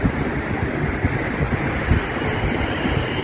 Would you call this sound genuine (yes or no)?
yes